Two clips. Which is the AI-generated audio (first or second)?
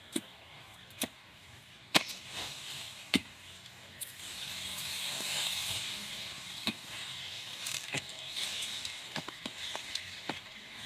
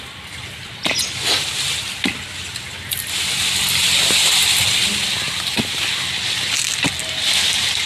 first